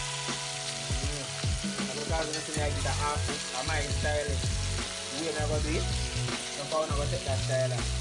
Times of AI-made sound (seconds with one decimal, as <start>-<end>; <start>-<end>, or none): 6.3-6.9